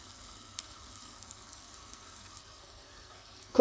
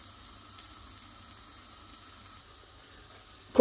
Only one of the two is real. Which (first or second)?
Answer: second